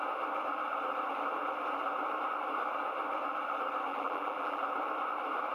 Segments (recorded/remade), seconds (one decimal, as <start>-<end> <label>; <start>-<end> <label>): 0.0-3.9 recorded; 3.9-4.6 remade; 4.6-5.5 recorded